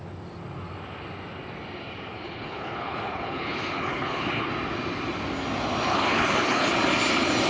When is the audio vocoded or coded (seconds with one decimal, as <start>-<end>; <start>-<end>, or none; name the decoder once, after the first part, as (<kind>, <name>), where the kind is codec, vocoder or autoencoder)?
2.1-4.5 (codec, HILCodec); 5.9-6.7